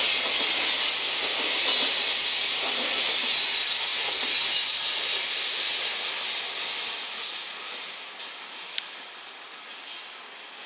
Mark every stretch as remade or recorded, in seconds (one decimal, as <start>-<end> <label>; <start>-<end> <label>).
0.0-10.7 recorded